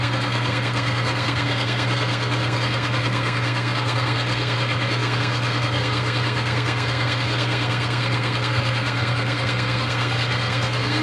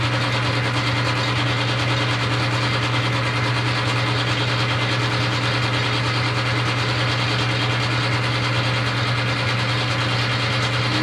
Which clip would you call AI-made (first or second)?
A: first